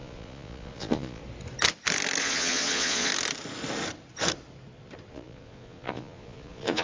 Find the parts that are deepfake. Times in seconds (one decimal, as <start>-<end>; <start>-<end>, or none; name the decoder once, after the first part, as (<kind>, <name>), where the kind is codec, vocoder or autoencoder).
0.0-1.2 (vocoder, Vocos); 2.2-3.1; 5.1-6.8